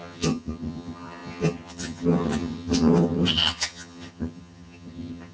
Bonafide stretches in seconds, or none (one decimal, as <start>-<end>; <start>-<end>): none